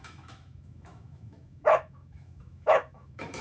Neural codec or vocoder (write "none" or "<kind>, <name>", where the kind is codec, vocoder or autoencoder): autoencoder, DAC-VAE